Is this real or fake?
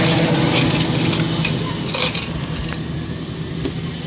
real